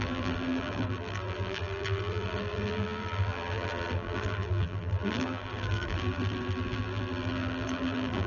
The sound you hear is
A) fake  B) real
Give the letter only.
A